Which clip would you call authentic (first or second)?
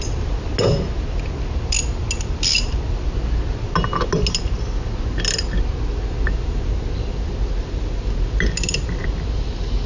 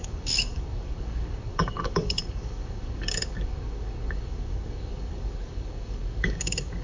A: first